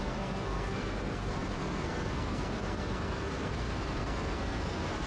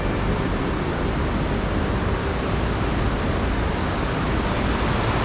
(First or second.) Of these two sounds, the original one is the second